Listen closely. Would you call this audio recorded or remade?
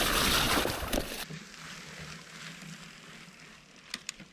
recorded